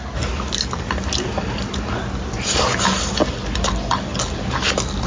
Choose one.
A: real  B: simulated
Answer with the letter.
A